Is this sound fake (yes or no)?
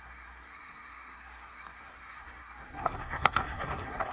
yes